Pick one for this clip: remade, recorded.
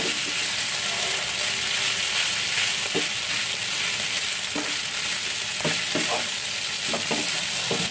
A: recorded